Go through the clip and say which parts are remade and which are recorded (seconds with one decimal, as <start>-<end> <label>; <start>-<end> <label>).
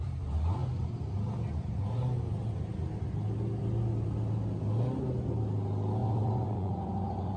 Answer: 0.0-6.0 recorded; 6.0-7.4 remade